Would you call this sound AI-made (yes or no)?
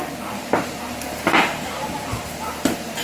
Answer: yes